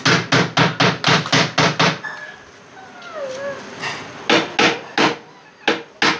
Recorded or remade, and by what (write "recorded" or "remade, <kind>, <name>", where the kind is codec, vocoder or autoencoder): recorded